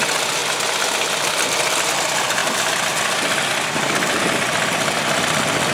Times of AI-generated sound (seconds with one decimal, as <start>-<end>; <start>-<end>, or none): none